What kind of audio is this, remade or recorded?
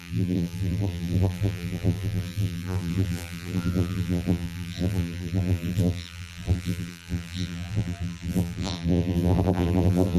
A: remade